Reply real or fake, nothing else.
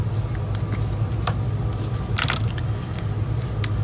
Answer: real